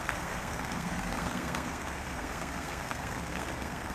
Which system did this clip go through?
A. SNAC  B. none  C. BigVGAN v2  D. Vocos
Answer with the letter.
A